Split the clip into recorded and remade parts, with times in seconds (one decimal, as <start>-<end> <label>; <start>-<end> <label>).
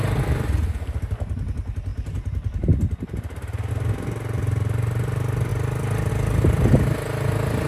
0.0-7.7 recorded